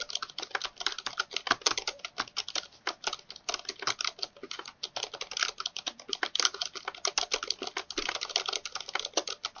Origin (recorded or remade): recorded